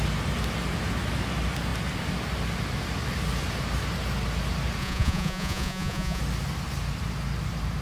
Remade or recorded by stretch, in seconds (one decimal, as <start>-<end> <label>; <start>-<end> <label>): 0.0-4.8 recorded; 4.8-6.2 remade; 6.2-7.8 recorded